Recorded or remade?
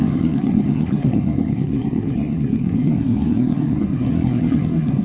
remade